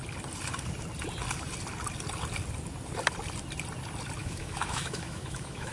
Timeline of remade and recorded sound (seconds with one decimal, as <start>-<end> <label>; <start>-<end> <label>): 0.0-4.2 recorded; 4.2-5.7 remade